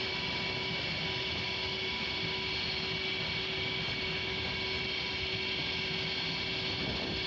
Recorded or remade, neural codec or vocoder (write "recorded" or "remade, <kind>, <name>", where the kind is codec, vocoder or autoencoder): recorded